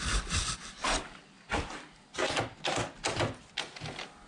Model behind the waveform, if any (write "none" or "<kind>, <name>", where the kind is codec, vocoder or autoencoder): none